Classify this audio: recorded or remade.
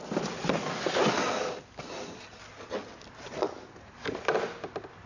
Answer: recorded